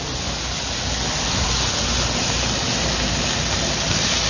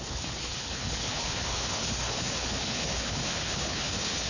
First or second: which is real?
first